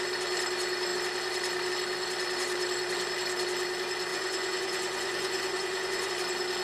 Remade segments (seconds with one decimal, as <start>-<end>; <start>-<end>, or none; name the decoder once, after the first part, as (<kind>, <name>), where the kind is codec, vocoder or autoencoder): 4.1-6.1 (vocoder, Vocos)